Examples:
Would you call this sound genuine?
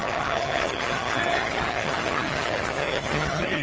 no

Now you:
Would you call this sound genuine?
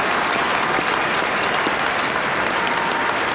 yes